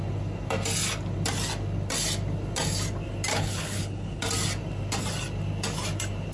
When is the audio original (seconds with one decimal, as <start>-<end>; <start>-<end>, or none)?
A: 0.0-3.3; 4.2-6.3